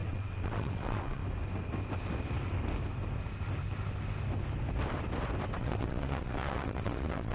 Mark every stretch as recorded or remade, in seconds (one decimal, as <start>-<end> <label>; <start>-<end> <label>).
0.0-1.2 remade; 1.2-5.6 recorded; 5.6-7.3 remade